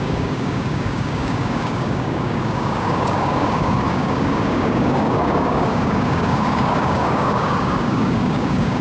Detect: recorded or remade remade